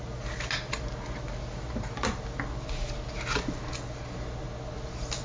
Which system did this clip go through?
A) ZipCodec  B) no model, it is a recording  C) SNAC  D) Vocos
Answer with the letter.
B